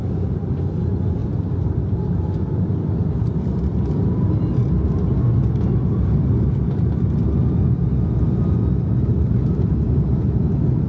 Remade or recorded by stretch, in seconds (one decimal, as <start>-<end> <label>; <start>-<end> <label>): 0.0-4.6 remade; 4.6-9.1 recorded; 9.1-10.9 remade